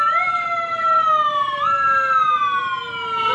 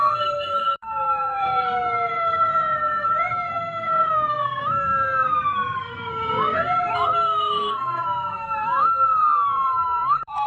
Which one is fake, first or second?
second